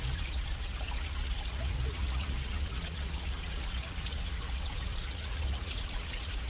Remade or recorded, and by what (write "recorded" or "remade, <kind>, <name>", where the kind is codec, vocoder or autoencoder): remade, vocoder, Vocos